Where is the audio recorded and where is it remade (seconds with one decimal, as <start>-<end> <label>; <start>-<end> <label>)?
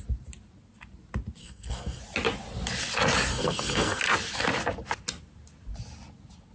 0.0-1.4 recorded; 1.4-2.0 remade; 2.0-3.3 recorded; 3.3-4.0 remade; 4.0-6.5 recorded